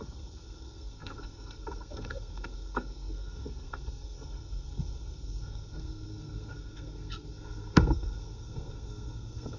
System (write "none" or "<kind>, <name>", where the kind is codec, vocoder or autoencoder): codec, SNAC